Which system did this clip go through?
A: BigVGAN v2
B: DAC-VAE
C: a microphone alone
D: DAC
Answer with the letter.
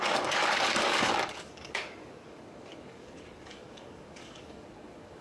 D